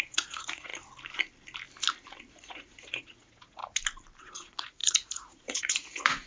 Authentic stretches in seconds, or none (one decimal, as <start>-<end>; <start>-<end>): 0.7-2.3; 3.6-4.2